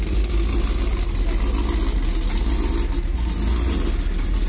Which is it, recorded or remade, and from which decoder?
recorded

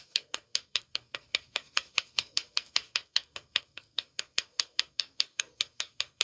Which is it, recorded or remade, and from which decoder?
remade, codec, SNAC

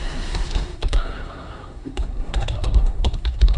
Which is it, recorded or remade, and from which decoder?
remade, codec, SNAC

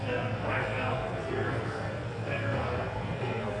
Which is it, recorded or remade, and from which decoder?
remade, codec, SNAC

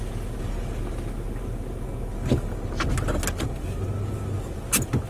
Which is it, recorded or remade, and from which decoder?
recorded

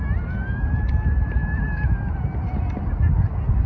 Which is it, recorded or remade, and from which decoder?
recorded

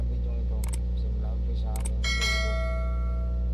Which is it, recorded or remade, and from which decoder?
recorded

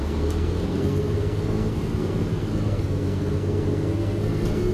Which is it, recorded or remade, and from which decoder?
remade, codec, SNAC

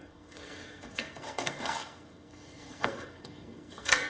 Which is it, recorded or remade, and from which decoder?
remade, codec, SNAC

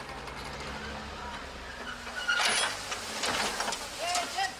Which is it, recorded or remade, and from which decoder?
recorded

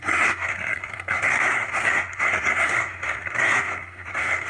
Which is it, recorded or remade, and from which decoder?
remade, codec, SNAC